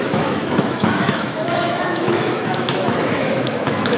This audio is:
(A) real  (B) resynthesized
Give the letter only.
B